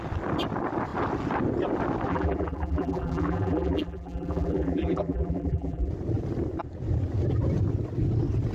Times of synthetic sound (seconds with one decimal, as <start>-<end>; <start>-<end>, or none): 2.1-5.9